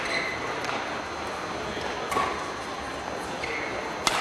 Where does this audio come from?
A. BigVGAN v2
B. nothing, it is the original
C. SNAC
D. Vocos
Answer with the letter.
B